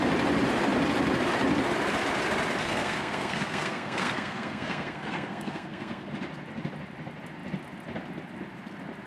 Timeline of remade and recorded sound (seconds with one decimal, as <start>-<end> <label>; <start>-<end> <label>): 0.0-2.6 recorded; 2.6-6.1 remade; 6.1-9.1 recorded